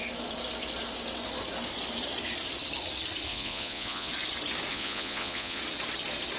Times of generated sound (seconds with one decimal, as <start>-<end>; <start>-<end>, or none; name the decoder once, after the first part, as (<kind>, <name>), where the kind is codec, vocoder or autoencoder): 3.3-4.1 (vocoder, Vocos); 4.7-5.6